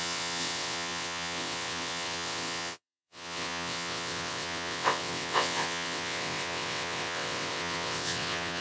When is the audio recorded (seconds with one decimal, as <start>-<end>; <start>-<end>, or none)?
none